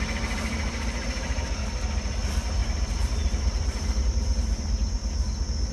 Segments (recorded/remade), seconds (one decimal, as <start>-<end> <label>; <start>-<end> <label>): 0.0-1.6 remade; 1.6-2.2 recorded; 2.2-5.0 remade; 5.0-5.7 recorded